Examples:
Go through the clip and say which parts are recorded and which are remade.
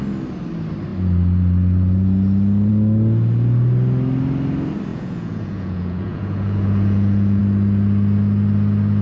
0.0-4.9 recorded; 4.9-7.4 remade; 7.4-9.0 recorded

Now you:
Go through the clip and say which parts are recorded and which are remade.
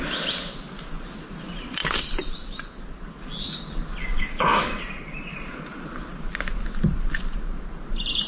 0.0-4.0 recorded; 4.0-4.8 remade; 4.8-8.3 recorded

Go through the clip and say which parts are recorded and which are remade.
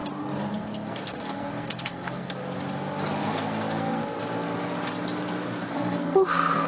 0.0-0.5 recorded; 0.5-2.4 remade; 2.4-3.2 recorded; 3.2-4.2 remade; 4.2-5.7 recorded; 5.7-6.7 remade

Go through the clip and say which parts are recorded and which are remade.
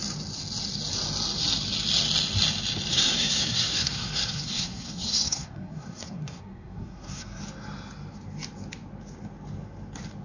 0.0-2.9 recorded; 2.9-7.4 remade; 7.4-10.2 recorded